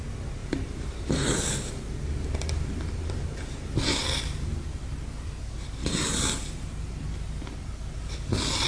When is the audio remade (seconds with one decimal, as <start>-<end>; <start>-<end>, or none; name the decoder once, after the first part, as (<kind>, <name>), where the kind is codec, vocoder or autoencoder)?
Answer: none